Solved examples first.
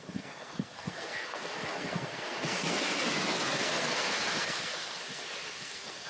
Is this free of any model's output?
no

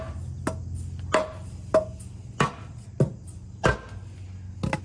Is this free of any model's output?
yes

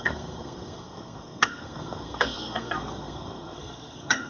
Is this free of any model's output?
no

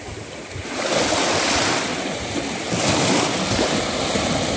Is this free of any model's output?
yes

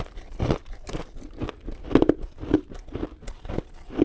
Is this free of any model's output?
no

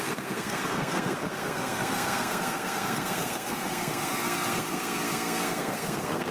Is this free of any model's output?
no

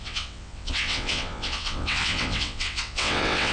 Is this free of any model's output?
no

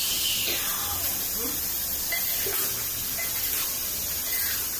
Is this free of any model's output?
yes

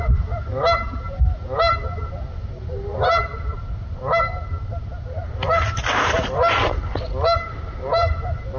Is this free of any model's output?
yes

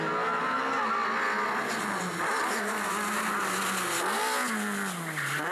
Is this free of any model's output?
yes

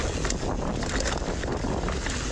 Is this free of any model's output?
yes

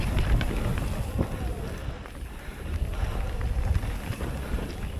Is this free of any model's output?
yes